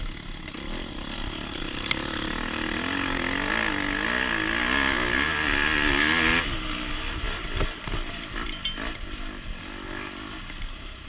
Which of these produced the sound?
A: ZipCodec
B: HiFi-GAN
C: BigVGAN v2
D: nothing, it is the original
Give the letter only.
D